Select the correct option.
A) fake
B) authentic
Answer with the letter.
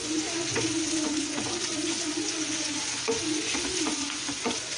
A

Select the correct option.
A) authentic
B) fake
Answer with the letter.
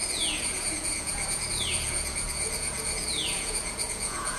B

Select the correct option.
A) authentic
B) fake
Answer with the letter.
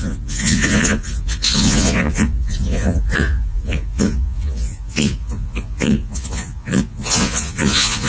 B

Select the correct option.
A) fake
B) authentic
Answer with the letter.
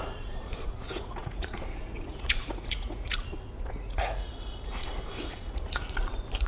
A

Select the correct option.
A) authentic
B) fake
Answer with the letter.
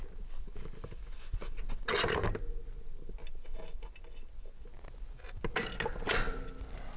A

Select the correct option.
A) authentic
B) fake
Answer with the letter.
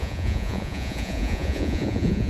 B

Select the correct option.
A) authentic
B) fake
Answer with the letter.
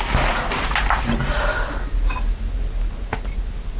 A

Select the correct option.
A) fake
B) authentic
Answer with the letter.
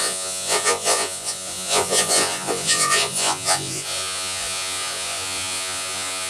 A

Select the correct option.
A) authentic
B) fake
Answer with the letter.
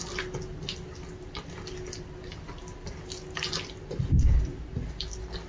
A